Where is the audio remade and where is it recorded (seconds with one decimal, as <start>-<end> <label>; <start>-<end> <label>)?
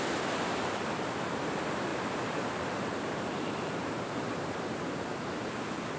0.0-1.9 recorded; 1.9-5.5 remade; 5.5-6.0 recorded